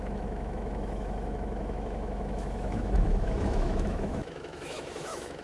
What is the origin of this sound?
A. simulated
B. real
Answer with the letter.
A